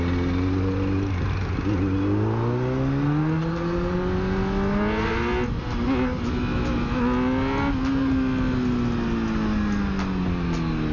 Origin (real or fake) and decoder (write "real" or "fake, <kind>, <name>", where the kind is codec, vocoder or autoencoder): real